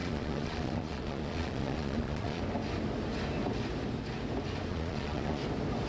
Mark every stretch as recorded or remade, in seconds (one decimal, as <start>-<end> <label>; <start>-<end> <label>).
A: 0.0-2.4 remade; 2.4-4.7 recorded; 4.7-5.4 remade; 5.4-5.9 recorded